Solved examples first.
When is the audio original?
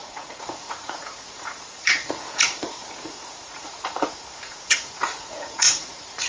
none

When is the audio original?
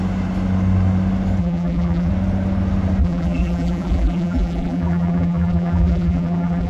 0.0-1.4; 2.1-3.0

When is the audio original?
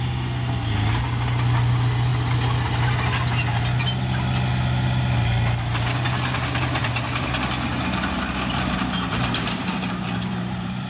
0.0-6.8; 7.3-7.9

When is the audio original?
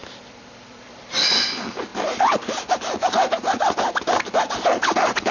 1.5-5.3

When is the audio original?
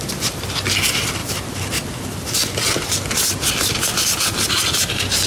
0.0-5.3